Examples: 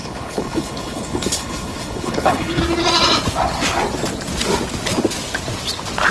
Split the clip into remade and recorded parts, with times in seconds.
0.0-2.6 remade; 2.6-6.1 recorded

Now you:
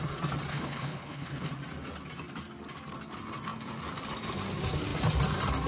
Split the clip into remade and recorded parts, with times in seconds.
0.0-0.5 recorded; 0.5-1.5 remade; 1.5-5.7 recorded